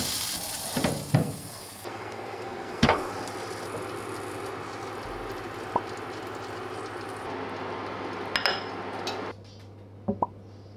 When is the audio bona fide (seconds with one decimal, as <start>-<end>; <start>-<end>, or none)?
0.0-1.2; 3.1-10.8